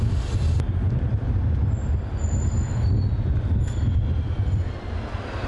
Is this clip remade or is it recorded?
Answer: recorded